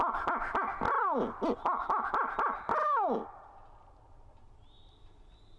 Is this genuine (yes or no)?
yes